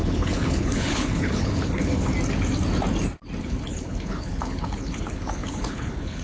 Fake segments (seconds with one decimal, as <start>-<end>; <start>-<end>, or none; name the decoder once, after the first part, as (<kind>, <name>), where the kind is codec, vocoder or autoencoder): 0.0-2.1 (codec, HILCodec); 3.4-6.2